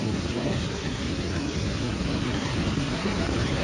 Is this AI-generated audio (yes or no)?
yes